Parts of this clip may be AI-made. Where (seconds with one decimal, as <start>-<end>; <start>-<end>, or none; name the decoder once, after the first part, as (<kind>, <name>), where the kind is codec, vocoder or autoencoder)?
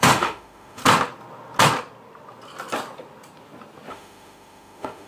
0.0-0.8 (autoencoder, DAC-VAE); 3.9-5.1